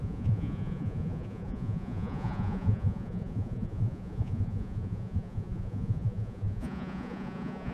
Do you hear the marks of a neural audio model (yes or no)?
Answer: yes